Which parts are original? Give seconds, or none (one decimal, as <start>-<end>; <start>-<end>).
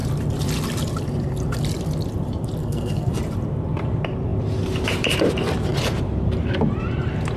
0.0-2.6; 3.2-7.4